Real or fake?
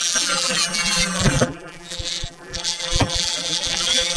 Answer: fake